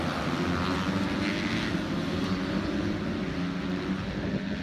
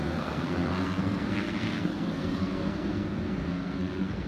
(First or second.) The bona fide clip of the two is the first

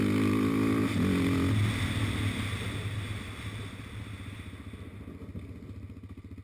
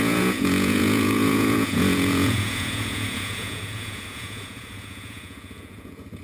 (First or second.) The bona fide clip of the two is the first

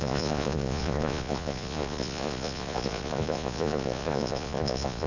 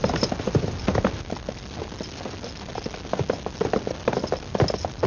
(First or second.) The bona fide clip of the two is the second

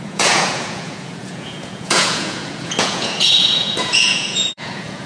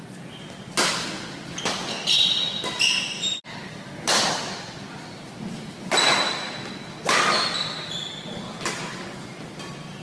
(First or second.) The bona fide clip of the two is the second